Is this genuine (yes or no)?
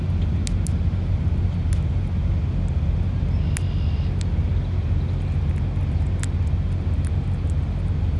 yes